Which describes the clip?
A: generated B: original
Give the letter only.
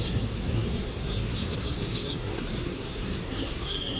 A